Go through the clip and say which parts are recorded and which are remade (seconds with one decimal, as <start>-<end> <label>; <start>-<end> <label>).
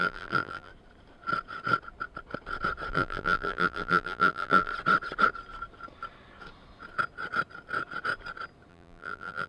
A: 0.0-0.7 remade; 0.7-2.9 recorded; 2.9-4.7 remade; 4.7-8.7 recorded; 8.7-9.5 remade